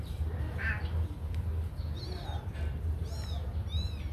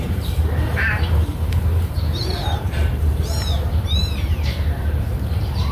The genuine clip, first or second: first